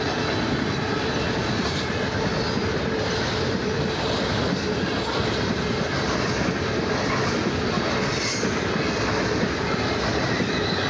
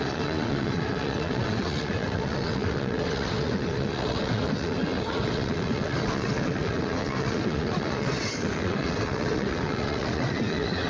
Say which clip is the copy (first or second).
second